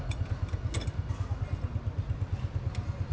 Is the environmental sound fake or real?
real